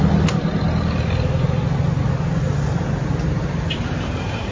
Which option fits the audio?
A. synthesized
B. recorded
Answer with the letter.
B